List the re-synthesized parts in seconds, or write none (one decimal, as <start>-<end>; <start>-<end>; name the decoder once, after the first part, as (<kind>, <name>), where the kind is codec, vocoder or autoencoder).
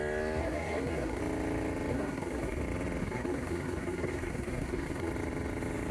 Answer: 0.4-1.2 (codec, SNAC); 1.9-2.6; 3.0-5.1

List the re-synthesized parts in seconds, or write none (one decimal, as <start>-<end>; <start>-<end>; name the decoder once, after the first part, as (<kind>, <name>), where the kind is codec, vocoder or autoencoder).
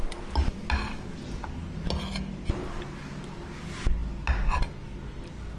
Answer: none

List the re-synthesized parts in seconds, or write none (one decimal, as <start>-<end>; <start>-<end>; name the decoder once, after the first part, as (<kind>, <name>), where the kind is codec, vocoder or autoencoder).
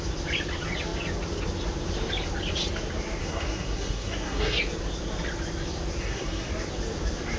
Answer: 3.2-4.6 (codec, SNAC); 6.0-6.5